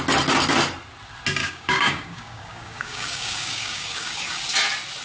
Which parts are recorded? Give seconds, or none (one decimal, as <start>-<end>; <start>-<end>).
0.0-1.4; 4.4-5.0